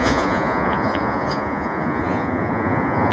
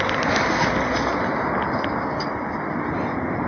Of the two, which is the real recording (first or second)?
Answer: second